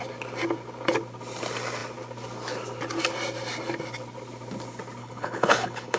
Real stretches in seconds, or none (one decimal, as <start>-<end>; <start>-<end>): 0.0-5.0